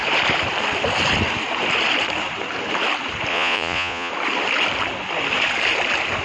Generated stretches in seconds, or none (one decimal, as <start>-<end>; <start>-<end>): 3.3-4.1